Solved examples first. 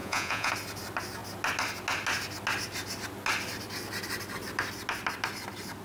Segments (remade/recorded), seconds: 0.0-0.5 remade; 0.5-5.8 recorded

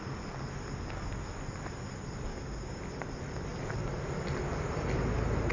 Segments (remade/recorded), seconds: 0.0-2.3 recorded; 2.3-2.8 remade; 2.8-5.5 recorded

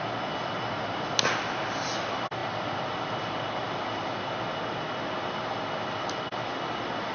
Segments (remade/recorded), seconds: 0.0-7.1 recorded

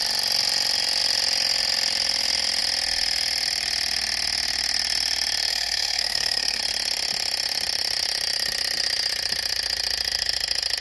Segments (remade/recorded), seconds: 0.0-5.5 recorded; 5.5-6.6 remade; 6.6-10.8 recorded

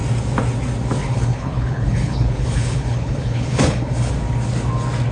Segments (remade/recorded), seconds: 0.0-1.0 recorded; 1.0-4.1 remade; 4.1-5.1 recorded

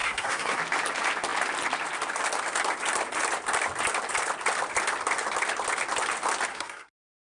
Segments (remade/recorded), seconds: 0.0-0.6 remade; 0.6-6.5 recorded; 6.5-7.3 remade